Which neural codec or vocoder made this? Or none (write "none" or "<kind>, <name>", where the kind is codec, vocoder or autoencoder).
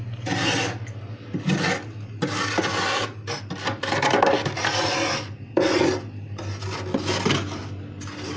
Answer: none